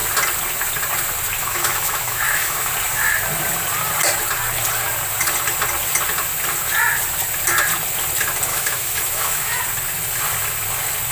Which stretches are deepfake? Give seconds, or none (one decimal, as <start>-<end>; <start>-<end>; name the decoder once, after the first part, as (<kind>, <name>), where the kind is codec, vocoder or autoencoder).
1.4-2.7 (autoencoder, DAC-VAE); 8.5-9.6